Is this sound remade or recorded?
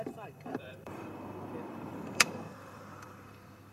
remade